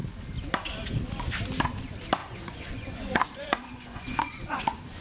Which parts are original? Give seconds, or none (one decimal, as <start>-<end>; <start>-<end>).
0.0-2.2